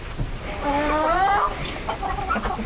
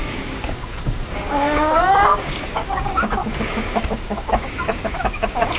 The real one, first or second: first